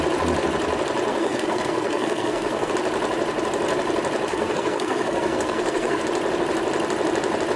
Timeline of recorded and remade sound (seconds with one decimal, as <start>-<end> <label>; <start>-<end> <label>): 0.0-1.1 recorded; 1.1-2.7 remade; 2.7-4.3 recorded; 4.3-6.0 remade; 6.0-7.6 recorded